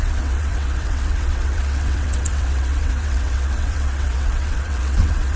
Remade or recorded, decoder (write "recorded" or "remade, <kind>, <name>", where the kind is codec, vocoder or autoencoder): remade, vocoder, WaveNeXt